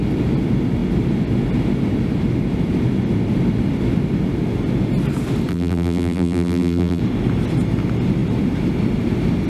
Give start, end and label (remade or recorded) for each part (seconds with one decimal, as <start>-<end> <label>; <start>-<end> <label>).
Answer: 0.0-5.5 recorded; 5.5-7.0 remade; 7.0-9.5 recorded